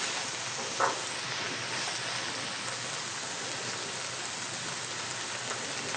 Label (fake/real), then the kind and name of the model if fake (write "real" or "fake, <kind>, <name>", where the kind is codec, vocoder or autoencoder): real